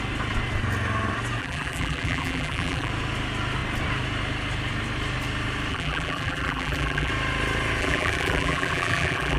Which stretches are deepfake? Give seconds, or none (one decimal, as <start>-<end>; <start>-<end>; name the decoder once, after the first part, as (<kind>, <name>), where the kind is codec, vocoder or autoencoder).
1.4-2.9 (vocoder, BigVGAN v2); 5.7-7.1; 7.8-9.4